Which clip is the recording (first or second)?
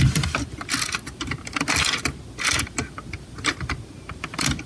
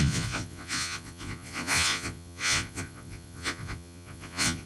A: first